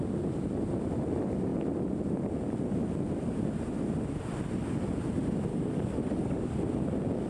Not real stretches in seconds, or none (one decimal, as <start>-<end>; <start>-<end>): 5.5-6.5